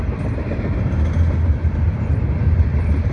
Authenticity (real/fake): real